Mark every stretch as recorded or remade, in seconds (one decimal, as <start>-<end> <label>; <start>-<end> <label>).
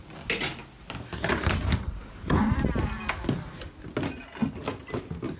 0.0-5.4 recorded